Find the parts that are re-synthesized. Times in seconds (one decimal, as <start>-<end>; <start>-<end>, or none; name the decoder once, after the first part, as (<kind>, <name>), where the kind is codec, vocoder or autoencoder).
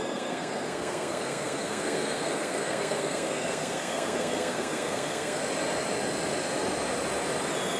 0.0-5.4 (codec, SNAC)